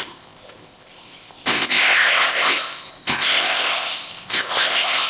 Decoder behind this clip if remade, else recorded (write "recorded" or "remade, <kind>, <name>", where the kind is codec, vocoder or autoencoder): remade, codec, ZipCodec